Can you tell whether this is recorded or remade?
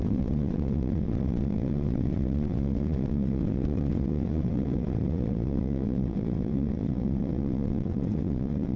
remade